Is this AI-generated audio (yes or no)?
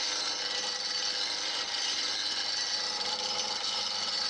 no